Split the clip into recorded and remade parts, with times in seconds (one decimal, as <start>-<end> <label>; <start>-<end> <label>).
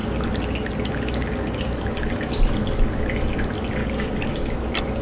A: 0.0-3.8 recorded; 3.8-4.3 remade; 4.3-5.0 recorded